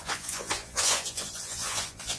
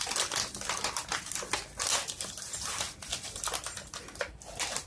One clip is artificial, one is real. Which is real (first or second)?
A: second